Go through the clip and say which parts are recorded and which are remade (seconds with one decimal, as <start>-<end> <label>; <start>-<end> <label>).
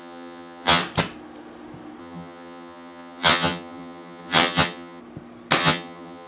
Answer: 0.0-0.8 remade; 0.8-2.0 recorded; 2.0-5.0 remade; 5.0-5.6 recorded; 5.6-6.3 remade